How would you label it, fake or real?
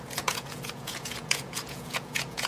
fake